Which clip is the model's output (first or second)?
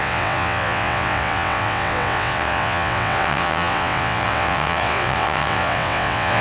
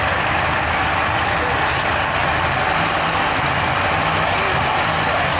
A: first